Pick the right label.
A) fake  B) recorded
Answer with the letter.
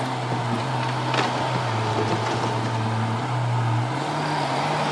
B